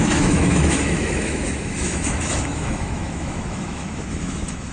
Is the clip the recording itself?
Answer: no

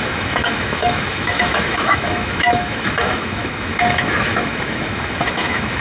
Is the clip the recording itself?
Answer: no